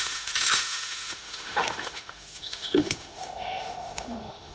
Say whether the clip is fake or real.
fake